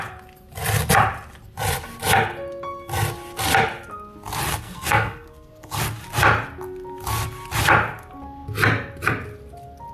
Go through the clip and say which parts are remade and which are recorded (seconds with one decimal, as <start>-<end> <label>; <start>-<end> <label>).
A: 0.0-4.5 recorded; 4.5-5.8 remade; 5.8-9.9 recorded